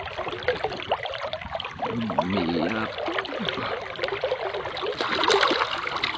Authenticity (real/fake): real